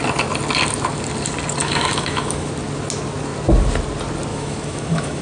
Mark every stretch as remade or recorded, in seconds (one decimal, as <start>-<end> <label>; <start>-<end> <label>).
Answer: 0.0-1.6 recorded; 1.6-2.5 remade; 2.5-4.3 recorded; 4.3-5.2 remade